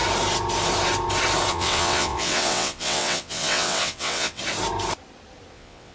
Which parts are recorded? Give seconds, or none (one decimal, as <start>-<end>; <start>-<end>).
0.0-1.5; 4.4-5.5